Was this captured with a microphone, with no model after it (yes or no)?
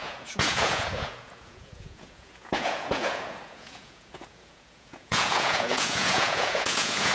no